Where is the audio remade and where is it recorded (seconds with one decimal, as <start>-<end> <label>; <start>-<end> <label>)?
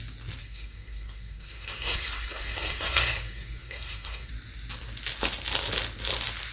0.0-0.4 recorded; 0.4-4.3 remade; 4.3-6.5 recorded